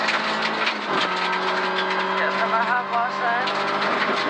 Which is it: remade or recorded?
recorded